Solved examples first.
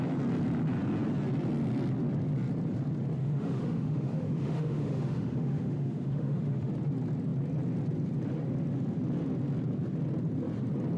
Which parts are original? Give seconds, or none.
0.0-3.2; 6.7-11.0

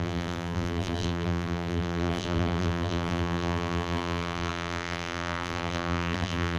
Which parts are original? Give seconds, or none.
none

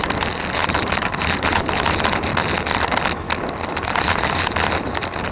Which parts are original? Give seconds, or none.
2.3-3.7

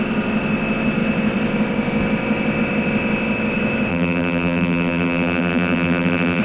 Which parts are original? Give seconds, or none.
0.0-3.9

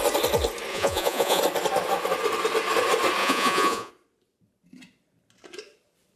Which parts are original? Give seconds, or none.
0.0-0.7; 1.4-3.2; 3.9-6.2